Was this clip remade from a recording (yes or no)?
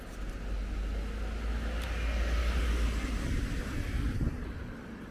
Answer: no